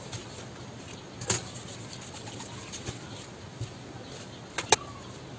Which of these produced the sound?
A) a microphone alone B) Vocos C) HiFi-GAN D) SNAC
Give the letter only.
A